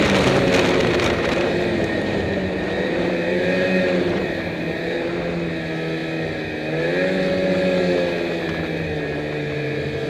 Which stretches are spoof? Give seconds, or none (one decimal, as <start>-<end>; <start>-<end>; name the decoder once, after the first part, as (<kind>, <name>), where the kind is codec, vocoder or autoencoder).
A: 0.8-5.1 (vocoder, BigVGAN v2)